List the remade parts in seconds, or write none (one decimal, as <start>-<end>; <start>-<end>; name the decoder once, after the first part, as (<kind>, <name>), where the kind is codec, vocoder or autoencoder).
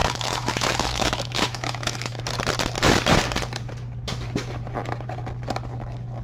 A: 0.0-2.2 (autoencoder, DAC-VAE)